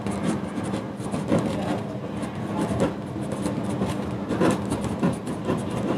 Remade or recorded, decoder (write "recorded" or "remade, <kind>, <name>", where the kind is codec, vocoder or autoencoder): recorded